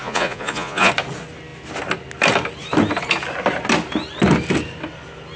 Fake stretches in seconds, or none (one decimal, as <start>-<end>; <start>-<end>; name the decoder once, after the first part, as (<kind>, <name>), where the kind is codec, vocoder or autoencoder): 0.0-0.9 (vocoder, Vocos)